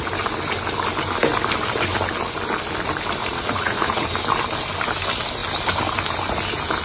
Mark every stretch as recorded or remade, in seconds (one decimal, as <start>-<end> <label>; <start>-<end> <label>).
0.0-3.2 recorded; 3.2-4.2 remade; 4.2-6.8 recorded